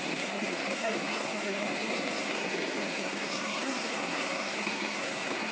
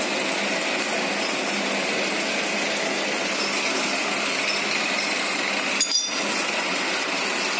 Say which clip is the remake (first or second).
first